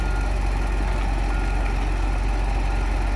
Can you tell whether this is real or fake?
real